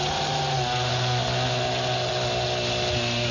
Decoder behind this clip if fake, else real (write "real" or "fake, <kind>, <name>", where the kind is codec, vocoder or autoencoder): real